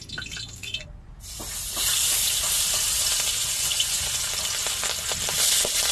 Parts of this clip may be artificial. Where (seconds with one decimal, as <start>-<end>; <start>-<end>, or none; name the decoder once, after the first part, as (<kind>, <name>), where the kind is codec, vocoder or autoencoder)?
0.6-1.1 (vocoder, Vocos); 3.4-4.2